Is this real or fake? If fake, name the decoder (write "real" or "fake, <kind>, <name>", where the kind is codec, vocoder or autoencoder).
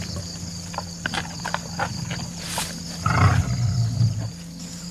real